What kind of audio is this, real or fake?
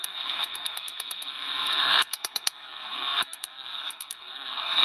fake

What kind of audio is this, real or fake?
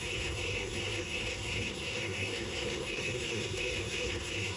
fake